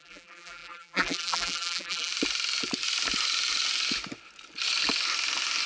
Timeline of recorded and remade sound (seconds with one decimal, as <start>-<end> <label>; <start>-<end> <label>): 0.0-2.1 remade; 2.1-5.7 recorded